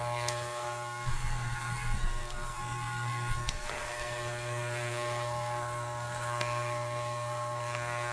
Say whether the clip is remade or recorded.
remade